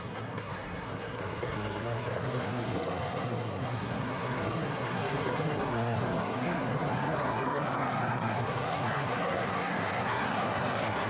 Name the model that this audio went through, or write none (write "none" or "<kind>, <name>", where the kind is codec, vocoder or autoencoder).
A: codec, SNAC